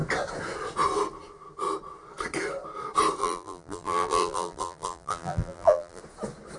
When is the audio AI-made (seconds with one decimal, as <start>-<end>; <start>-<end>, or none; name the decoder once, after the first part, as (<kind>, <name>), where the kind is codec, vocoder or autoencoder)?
3.2-6.0 (vocoder, BigVGAN v2)